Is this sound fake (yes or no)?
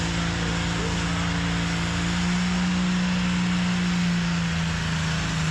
no